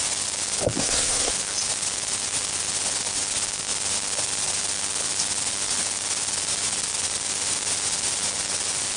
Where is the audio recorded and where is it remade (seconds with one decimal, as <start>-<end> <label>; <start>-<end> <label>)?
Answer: 0.0-0.8 recorded; 0.8-1.3 remade; 1.3-9.0 recorded